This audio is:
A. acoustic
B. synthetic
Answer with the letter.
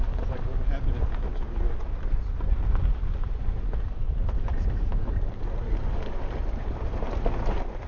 A